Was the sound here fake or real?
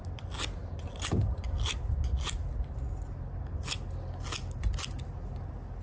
real